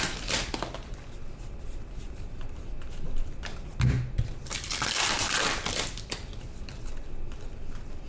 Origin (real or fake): real